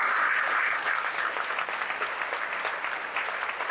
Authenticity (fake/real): real